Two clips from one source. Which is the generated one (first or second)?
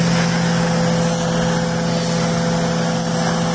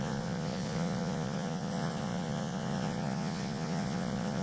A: second